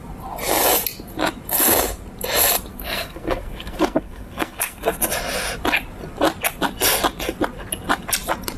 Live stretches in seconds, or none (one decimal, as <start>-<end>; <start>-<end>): 0.0-2.7; 5.0-8.6